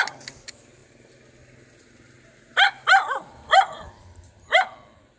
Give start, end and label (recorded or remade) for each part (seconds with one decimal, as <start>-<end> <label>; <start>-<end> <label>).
0.0-5.2 recorded